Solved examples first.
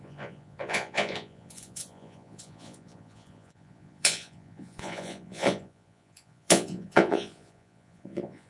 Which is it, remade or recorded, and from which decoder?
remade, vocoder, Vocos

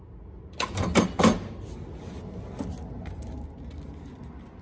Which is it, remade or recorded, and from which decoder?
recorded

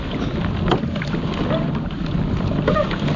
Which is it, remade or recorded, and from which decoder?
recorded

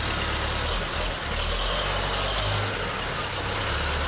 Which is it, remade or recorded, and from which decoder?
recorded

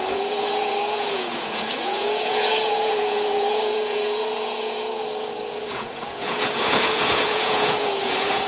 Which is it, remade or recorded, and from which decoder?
remade, vocoder, Vocos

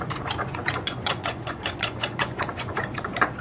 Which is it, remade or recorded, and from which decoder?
remade, vocoder, Vocos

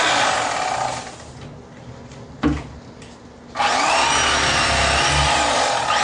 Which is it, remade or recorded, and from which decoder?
recorded